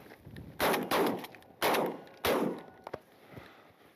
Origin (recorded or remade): recorded